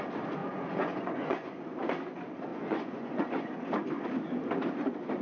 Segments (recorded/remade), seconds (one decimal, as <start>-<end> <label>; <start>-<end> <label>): 0.0-0.4 recorded; 0.4-1.6 remade; 1.6-2.5 recorded; 2.5-3.7 remade; 3.7-5.2 recorded